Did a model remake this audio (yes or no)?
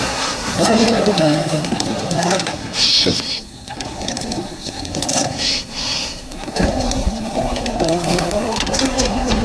yes